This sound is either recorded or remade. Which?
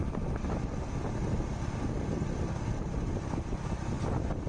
recorded